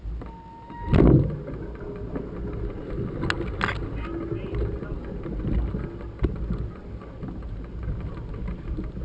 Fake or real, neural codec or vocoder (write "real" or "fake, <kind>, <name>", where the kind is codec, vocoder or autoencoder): real